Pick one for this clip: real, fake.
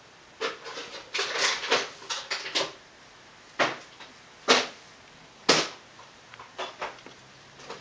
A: real